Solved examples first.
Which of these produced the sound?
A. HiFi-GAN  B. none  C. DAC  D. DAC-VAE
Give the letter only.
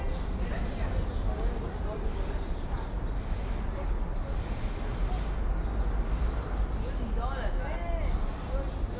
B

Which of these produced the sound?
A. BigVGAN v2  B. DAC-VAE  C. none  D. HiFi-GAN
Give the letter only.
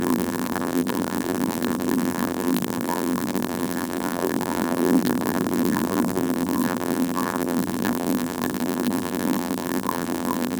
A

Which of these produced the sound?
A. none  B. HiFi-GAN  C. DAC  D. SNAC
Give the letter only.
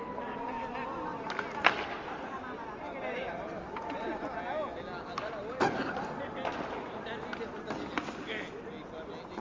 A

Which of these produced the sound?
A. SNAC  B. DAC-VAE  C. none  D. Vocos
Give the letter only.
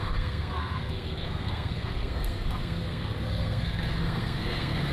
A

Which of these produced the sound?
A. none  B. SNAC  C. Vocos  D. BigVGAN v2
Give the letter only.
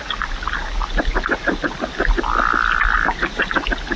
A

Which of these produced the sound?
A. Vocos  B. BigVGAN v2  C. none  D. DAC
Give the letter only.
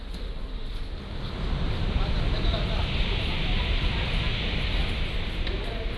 C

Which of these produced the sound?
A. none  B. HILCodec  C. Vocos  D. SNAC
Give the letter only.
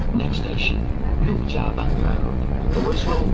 C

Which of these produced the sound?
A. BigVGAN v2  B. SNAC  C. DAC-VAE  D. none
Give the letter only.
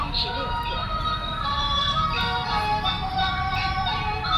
D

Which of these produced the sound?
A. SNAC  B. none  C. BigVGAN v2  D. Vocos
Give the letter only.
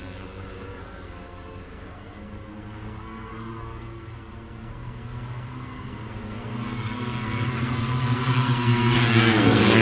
A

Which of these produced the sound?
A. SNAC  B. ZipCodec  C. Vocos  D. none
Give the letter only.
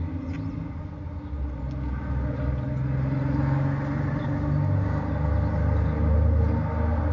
D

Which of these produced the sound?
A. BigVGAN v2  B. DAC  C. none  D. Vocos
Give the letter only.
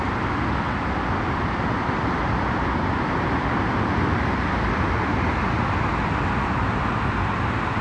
C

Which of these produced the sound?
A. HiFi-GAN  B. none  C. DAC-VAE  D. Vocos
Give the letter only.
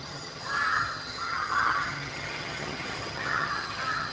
A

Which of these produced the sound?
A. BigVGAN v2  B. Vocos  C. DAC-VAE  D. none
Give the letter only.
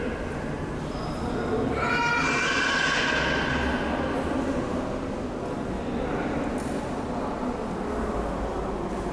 D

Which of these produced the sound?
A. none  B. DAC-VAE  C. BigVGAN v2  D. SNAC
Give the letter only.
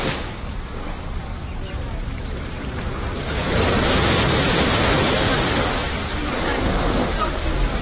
C